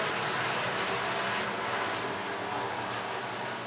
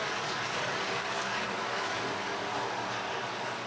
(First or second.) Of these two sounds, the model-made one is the second